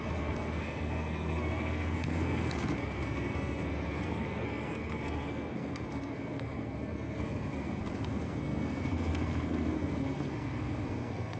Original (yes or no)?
no